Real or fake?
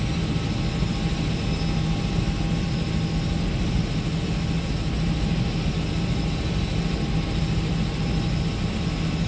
real